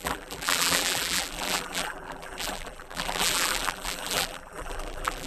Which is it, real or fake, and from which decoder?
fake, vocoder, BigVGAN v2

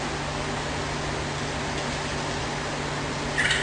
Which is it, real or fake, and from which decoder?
real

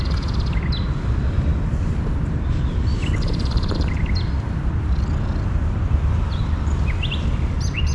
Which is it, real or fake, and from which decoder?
fake, vocoder, BigVGAN v2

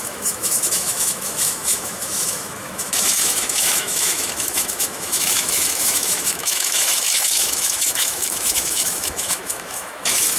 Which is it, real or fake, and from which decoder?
fake, autoencoder, DAC-VAE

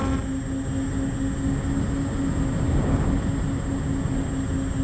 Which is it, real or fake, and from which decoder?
real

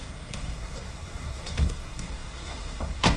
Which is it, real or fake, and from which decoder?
fake, codec, SNAC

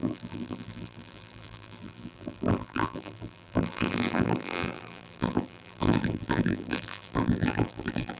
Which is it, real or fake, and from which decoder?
fake, vocoder, BigVGAN v2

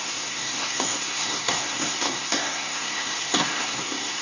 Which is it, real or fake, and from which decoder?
fake, codec, SNAC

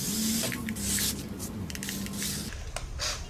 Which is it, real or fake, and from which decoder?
real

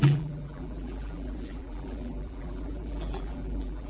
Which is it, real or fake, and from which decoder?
fake, vocoder, BigVGAN v2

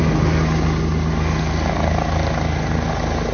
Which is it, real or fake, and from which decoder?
real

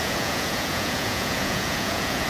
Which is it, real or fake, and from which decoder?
fake, vocoder, Vocos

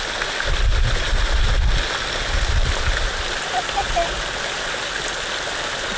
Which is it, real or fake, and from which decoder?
real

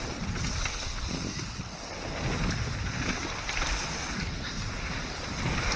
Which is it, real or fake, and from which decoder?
real